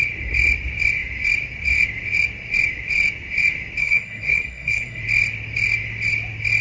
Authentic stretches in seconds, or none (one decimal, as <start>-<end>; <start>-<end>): 0.0-3.8; 5.0-6.6